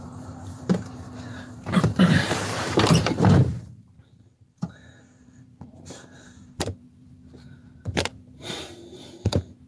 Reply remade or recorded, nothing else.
remade